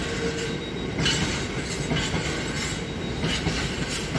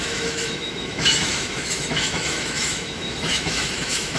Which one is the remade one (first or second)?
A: second